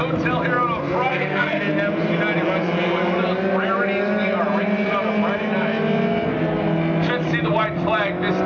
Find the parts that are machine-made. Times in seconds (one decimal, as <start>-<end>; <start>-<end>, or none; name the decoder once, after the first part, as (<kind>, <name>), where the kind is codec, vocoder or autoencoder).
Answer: 1.1-1.6 (codec, SNAC)